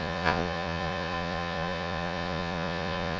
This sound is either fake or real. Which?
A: fake